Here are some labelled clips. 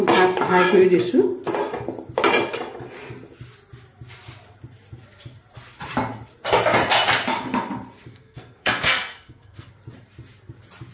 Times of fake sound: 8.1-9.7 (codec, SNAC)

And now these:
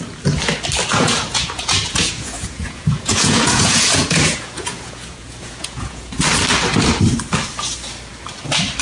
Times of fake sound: 0.9-6.1 (vocoder, Vocos)

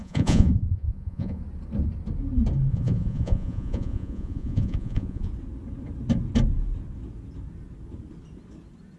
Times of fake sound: 0.0-1.4 (vocoder, Vocos); 2.7-5.3